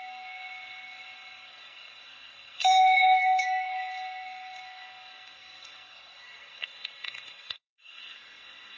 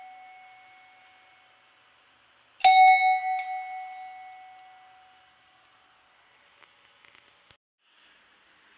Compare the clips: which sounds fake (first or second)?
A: first